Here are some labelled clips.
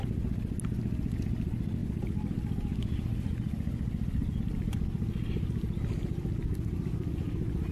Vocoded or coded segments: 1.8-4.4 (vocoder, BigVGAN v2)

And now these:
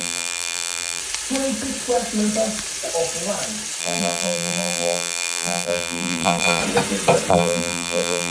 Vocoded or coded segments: 0.0-1.0 (vocoder, BigVGAN v2); 3.8-6.6; 7.3-8.3

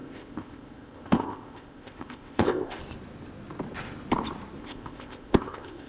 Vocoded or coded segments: 0.0-2.8 (codec, ZipCodec); 4.6-5.9

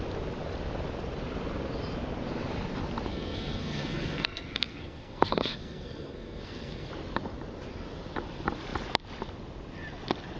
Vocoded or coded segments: 3.1-6.9 (codec, SNAC)

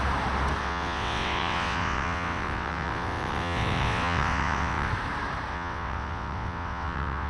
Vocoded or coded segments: 0.6-4.9 (vocoder, WaveNeXt); 5.5-7.3

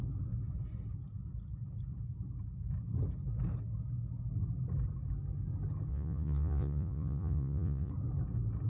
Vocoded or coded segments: 5.9-7.9 (vocoder, Vocos)

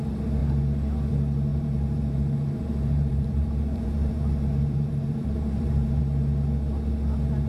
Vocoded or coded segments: 1.5-6.0 (vocoder, BigVGAN v2)